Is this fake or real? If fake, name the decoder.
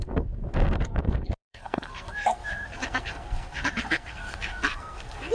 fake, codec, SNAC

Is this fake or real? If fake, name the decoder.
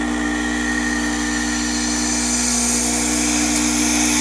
real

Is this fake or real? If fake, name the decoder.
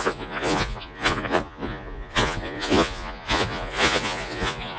fake, vocoder, Vocos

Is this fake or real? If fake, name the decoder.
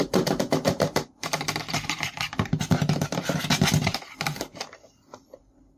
fake, vocoder, BigVGAN v2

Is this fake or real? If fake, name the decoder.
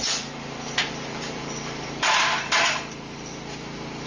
fake, vocoder, BigVGAN v2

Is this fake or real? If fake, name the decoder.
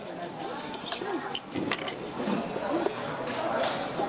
real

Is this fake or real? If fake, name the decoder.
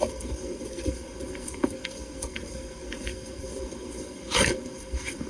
fake, codec, SNAC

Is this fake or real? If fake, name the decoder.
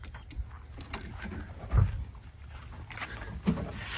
real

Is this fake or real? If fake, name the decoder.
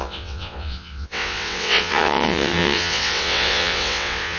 fake, vocoder, WaveNeXt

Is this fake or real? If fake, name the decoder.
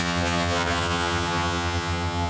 fake, vocoder, HiFi-GAN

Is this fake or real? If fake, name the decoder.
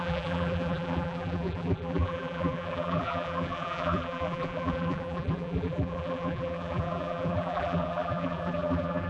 fake, vocoder, BigVGAN v2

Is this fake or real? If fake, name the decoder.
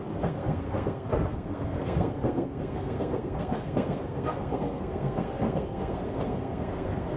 fake, codec, SNAC